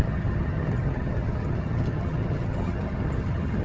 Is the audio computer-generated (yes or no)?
yes